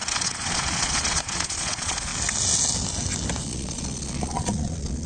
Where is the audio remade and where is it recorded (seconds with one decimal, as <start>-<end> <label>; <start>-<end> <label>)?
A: 0.0-2.1 remade; 2.1-3.4 recorded; 3.4-5.1 remade